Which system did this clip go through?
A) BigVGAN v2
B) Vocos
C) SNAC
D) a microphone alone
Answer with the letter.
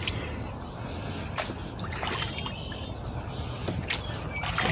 D